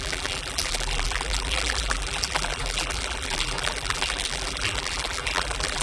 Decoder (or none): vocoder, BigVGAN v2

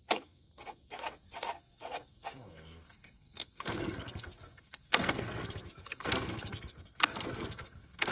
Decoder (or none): codec, SNAC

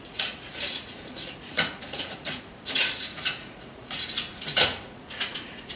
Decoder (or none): vocoder, Vocos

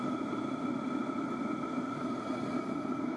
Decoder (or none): none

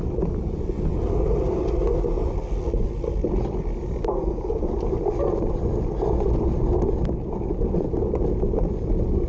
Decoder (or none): none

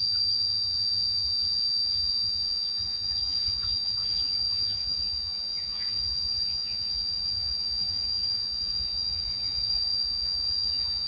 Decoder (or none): vocoder, Vocos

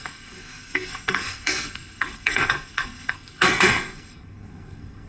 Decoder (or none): codec, SNAC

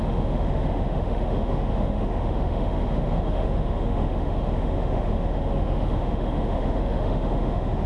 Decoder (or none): autoencoder, DAC-VAE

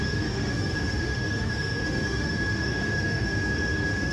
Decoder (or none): autoencoder, DAC-VAE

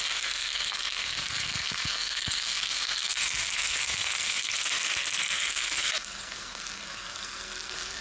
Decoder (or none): codec, SNAC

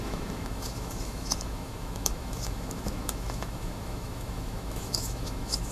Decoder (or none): autoencoder, DAC-VAE